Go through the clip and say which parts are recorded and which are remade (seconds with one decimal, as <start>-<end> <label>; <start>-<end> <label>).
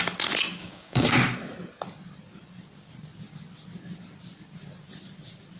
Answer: 0.0-0.6 recorded; 0.6-1.1 remade; 1.1-5.6 recorded